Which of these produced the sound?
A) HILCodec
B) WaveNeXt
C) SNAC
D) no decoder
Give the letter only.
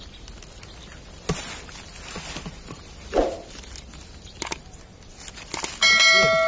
D